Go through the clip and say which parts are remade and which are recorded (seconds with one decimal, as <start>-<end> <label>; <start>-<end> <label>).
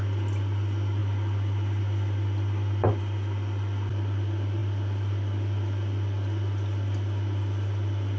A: 0.0-8.2 recorded